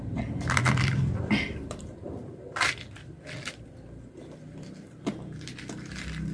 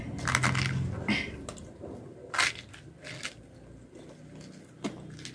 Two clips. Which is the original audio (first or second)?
second